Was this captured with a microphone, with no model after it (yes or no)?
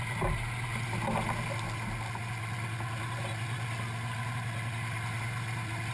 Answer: yes